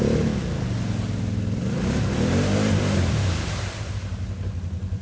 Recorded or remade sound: recorded